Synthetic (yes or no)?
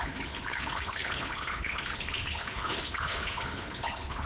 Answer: yes